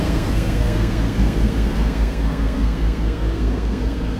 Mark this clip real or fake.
fake